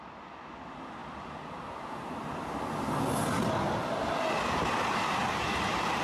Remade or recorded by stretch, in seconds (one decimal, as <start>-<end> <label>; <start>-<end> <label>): 0.0-6.0 recorded